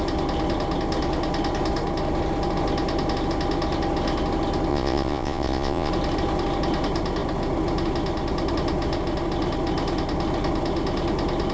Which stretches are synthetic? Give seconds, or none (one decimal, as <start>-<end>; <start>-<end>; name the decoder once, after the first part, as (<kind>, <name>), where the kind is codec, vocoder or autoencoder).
4.7-5.9 (vocoder, Vocos)